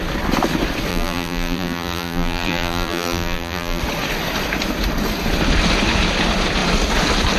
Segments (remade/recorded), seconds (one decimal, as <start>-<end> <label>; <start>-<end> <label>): 0.0-0.9 recorded; 0.9-3.8 remade; 3.8-7.4 recorded